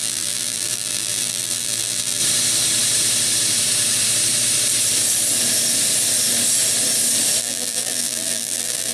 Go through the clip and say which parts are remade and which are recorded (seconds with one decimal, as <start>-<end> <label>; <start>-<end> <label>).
0.0-2.2 remade; 2.2-7.4 recorded; 7.4-8.9 remade